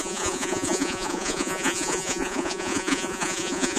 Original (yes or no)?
no